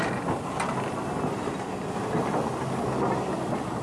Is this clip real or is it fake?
real